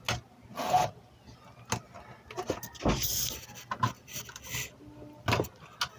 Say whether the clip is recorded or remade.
recorded